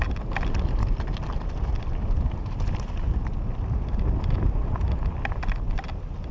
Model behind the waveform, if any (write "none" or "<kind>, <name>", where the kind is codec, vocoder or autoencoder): none